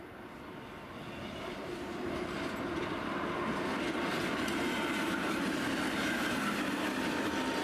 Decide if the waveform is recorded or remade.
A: recorded